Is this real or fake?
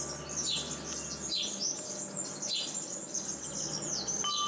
real